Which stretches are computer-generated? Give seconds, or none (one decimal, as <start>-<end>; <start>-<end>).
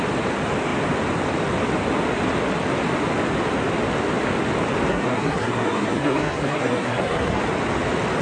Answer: 4.9-7.4